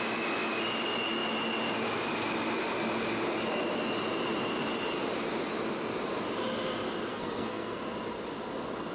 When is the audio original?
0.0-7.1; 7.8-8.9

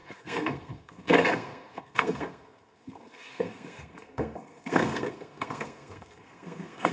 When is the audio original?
none

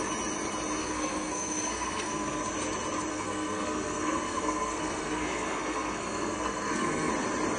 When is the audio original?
0.0-0.8; 2.4-3.1; 7.1-7.6

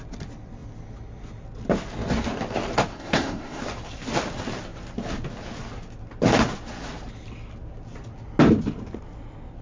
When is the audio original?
0.0-2.9; 3.6-9.6

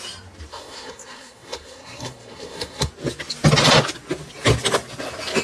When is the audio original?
0.0-0.5; 2.9-5.4

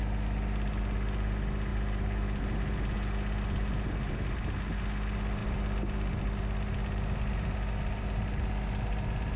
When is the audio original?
0.0-9.4

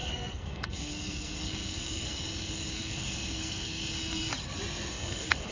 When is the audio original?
4.3-4.9

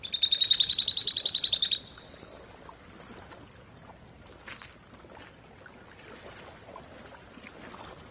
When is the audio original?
0.0-8.1